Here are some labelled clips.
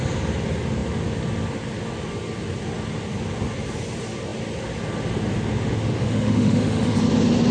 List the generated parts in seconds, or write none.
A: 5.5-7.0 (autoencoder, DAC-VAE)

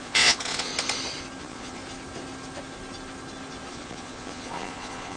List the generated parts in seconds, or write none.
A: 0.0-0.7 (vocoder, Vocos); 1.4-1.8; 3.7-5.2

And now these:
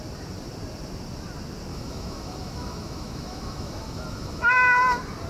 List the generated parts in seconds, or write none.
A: 1.7-4.5 (autoencoder, DAC-VAE)

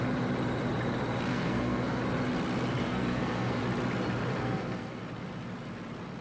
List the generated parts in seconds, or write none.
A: 1.3-2.0 (codec, SNAC); 2.8-3.6; 4.4-5.0

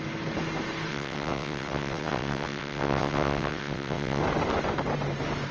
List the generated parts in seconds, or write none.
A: 0.9-4.2 (vocoder, WaveNeXt)

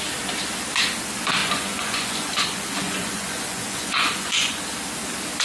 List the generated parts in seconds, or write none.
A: 1.4-4.6 (vocoder, Vocos)